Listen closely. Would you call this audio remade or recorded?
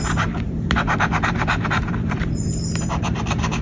remade